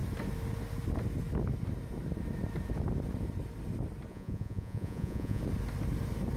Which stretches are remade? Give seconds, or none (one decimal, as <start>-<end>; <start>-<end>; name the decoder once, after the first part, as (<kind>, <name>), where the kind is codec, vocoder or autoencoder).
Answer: 4.1-5.4 (vocoder, Vocos)

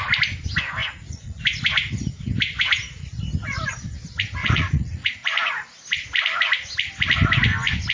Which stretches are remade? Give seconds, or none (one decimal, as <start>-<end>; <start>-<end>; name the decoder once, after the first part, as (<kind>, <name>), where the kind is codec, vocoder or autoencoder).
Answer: 0.8-1.4 (vocoder, Vocos); 4.4-5.1